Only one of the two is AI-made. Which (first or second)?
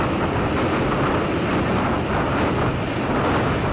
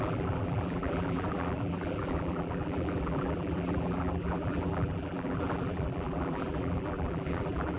second